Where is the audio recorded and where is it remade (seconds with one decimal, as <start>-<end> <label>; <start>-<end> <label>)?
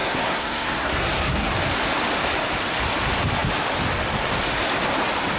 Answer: 0.0-1.5 remade; 1.5-5.4 recorded